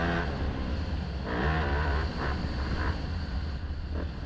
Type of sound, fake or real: real